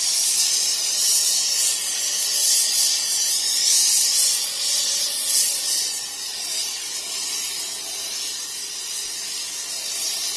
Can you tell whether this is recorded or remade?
recorded